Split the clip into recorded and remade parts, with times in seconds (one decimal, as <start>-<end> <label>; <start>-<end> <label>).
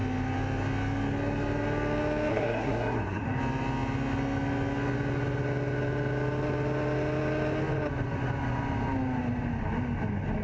0.0-2.3 recorded; 2.3-3.2 remade; 3.2-10.4 recorded